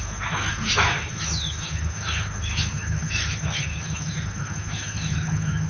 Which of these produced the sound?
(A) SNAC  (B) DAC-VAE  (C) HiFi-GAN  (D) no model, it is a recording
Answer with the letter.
B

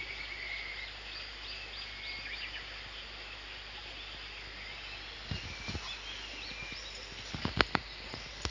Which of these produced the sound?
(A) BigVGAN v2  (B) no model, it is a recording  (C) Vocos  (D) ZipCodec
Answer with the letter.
B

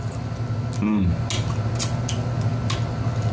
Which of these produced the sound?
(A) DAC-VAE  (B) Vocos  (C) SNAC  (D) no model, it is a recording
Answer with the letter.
D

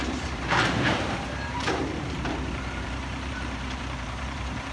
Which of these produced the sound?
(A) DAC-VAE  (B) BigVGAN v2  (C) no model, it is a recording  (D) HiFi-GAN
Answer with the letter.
B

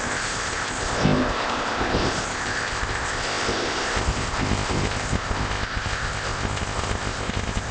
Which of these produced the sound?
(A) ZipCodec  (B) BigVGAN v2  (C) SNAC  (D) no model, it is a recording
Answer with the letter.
A